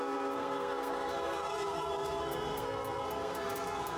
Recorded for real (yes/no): no